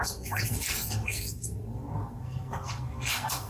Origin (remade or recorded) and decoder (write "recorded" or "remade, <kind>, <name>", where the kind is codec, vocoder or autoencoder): remade, codec, SNAC